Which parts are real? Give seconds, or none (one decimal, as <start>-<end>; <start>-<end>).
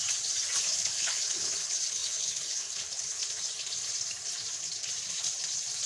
0.0-0.6; 3.2-5.9